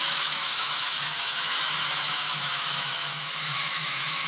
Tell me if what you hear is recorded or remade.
remade